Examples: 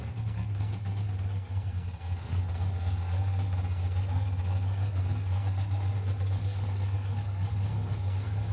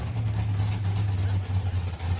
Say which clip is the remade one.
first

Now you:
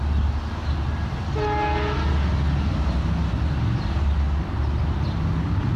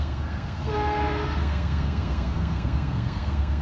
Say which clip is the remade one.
second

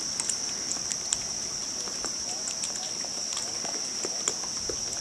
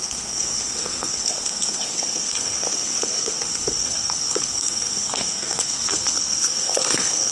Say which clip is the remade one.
second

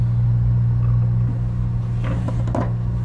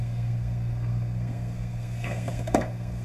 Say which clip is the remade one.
second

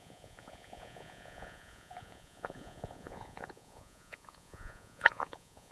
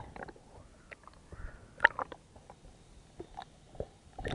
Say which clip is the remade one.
first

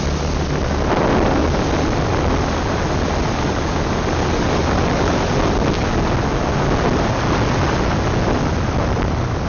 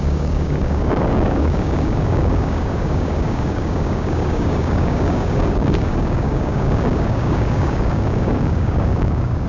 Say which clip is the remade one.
second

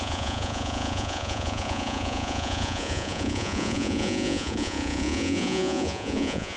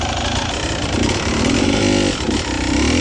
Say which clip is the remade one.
first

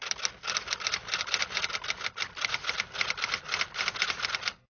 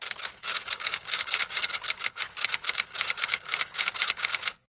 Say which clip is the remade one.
second